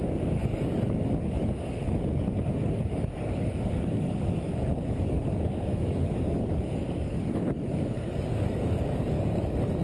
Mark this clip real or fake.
fake